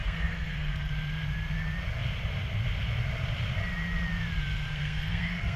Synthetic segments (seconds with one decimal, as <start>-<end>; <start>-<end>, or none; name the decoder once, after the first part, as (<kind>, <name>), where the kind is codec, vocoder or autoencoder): 0.0-0.9 (codec, SNAC); 4.7-5.6